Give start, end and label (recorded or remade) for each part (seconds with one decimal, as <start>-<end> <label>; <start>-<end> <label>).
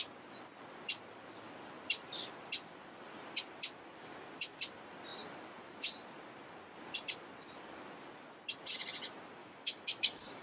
0.0-9.4 recorded; 9.4-10.4 remade